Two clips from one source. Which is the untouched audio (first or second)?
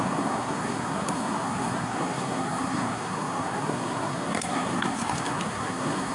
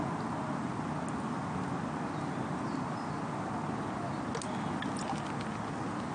second